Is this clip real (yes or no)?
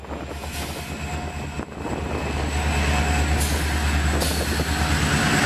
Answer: yes